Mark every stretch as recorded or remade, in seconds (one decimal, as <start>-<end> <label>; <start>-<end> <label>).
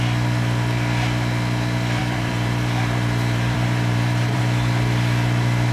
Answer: 0.0-2.0 recorded; 2.0-4.4 remade; 4.4-5.7 recorded